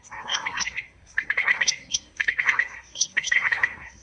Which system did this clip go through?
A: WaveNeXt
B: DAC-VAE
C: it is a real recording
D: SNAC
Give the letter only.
D